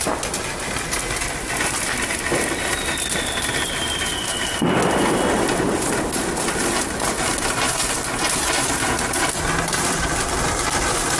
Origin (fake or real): real